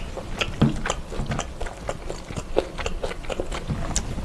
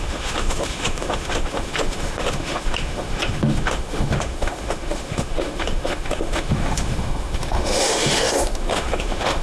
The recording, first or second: first